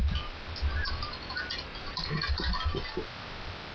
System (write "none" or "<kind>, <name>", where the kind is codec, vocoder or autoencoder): none